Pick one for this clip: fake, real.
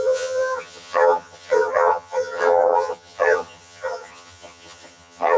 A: fake